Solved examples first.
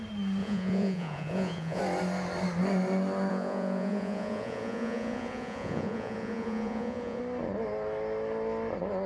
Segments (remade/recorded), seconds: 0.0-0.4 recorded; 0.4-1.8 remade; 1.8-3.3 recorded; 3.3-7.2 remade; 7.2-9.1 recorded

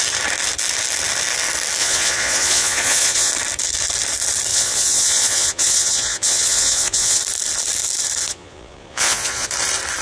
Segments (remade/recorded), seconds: 0.0-1.8 recorded; 1.8-3.3 remade; 3.3-4.5 recorded; 4.5-7.2 remade; 7.2-8.3 recorded; 8.3-9.5 remade; 9.5-10.0 recorded

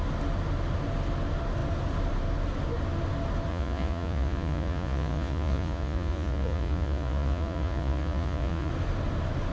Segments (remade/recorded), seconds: 0.0-3.5 recorded; 3.5-8.7 remade; 8.7-9.5 recorded

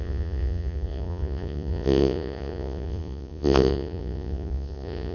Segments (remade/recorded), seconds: 0.0-5.1 remade

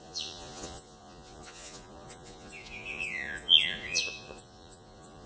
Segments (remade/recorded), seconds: 0.0-5.3 remade

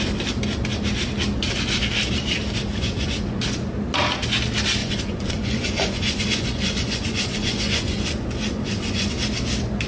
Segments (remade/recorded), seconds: 0.0-2.7 recorded; 2.7-3.4 remade; 3.4-4.8 recorded; 4.8-9.1 remade; 9.1-9.9 recorded

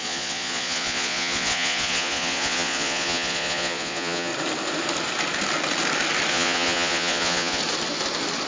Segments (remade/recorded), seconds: 0.0-4.3 remade; 4.3-6.3 recorded; 6.3-7.6 remade; 7.6-8.5 recorded

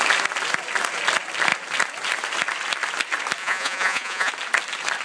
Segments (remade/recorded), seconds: 0.0-3.4 recorded; 3.4-4.3 remade; 4.3-5.0 recorded